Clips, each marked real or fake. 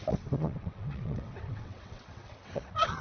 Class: fake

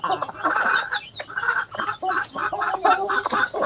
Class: real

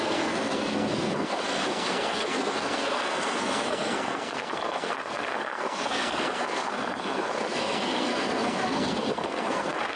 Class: fake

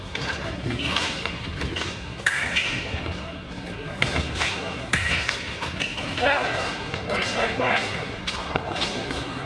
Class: fake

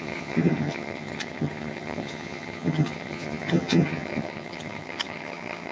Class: fake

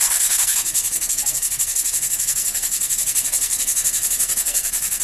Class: fake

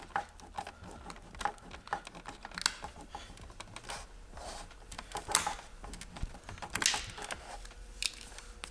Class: real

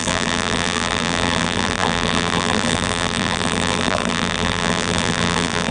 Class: fake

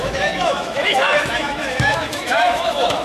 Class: fake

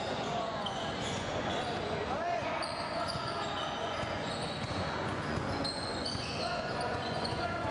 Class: fake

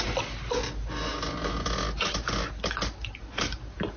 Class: real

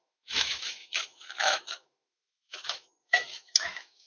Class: fake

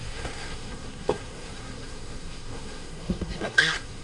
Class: fake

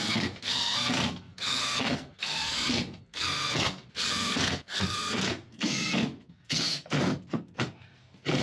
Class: fake